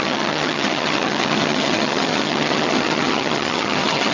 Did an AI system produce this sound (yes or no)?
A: yes